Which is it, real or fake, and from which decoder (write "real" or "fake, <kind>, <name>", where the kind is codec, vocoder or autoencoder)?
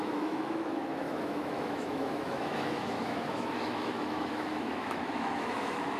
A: fake, autoencoder, DAC-VAE